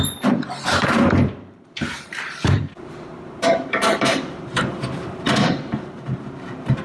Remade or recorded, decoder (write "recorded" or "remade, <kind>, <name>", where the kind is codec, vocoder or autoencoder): remade, vocoder, BigVGAN v2